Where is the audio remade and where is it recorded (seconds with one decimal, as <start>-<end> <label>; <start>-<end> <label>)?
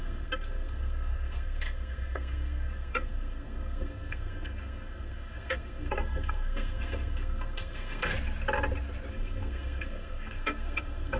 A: 0.0-8.1 remade; 8.1-9.1 recorded; 9.1-11.2 remade